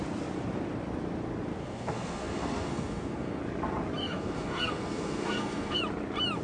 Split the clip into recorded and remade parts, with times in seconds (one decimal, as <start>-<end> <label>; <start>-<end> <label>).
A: 0.0-1.6 recorded; 1.6-3.4 remade; 3.4-4.0 recorded; 4.0-5.8 remade; 5.8-6.4 recorded